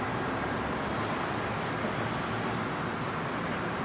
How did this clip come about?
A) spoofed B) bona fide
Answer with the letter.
B